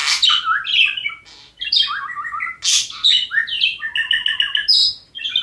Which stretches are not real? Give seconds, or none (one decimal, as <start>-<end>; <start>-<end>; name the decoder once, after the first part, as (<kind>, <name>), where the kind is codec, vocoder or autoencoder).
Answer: none